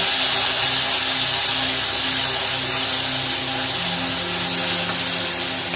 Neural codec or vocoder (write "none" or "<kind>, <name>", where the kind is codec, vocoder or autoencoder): none